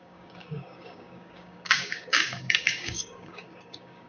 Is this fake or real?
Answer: fake